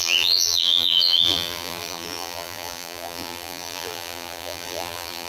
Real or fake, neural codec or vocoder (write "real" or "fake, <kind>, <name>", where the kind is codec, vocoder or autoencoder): fake, vocoder, BigVGAN v2